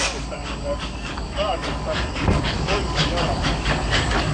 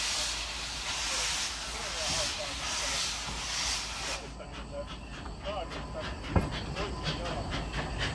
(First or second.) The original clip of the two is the second